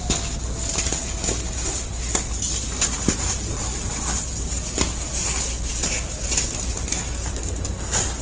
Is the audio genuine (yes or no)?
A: yes